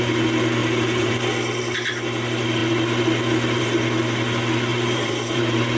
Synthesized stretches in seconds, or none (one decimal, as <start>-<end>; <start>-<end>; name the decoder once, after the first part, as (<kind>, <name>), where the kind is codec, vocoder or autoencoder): 0.6-1.1 (vocoder, BigVGAN v2); 4.7-5.8